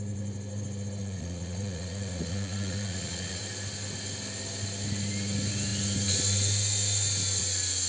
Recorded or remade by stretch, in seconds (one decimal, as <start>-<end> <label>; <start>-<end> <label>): 0.0-1.0 recorded; 1.0-3.4 remade; 3.4-7.9 recorded